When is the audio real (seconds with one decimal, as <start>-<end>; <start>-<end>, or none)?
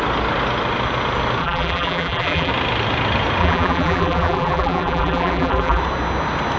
0.0-1.4; 2.5-3.4; 5.8-6.6